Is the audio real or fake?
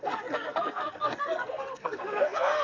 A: fake